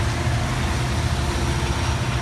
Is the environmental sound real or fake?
real